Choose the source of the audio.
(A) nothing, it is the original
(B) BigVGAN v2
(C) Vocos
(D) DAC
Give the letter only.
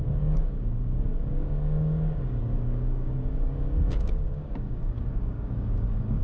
D